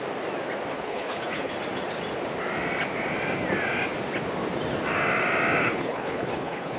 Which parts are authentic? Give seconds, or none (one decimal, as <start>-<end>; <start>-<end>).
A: 0.0-0.7; 1.5-5.6